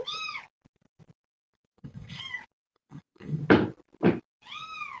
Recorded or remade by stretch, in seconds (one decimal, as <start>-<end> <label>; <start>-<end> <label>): 0.0-1.7 recorded; 1.7-2.2 remade; 2.2-2.6 recorded; 2.6-3.4 remade; 3.4-5.0 recorded